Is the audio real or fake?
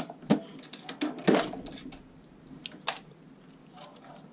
real